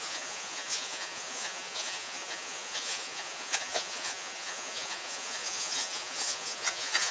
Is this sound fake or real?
fake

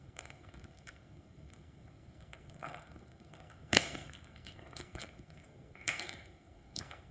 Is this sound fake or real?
fake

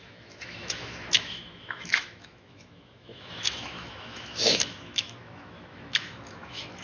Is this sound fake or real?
fake